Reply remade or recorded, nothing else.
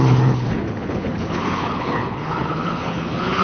remade